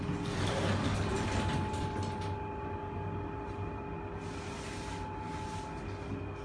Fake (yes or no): no